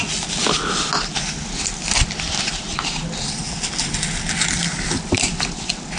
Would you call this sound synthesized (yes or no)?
no